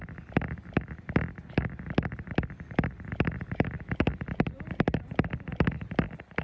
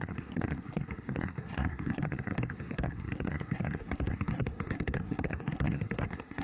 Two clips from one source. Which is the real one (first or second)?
first